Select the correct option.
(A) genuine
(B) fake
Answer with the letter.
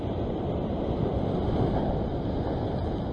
A